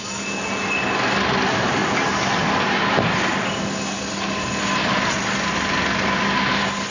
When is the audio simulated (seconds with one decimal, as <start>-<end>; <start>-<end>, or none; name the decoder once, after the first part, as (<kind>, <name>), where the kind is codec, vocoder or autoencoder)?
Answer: none